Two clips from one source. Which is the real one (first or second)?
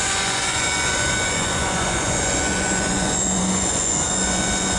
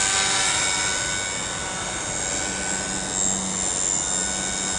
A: second